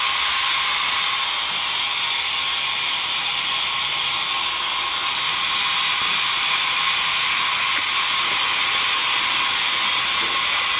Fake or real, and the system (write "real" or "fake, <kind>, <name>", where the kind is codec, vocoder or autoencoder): real